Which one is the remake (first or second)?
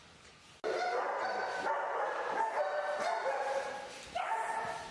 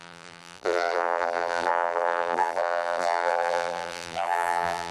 second